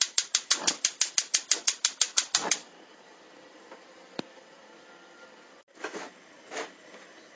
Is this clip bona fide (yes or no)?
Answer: no